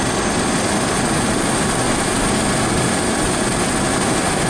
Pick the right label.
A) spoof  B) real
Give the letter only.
B